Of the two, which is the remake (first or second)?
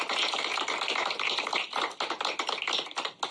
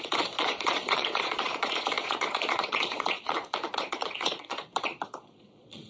second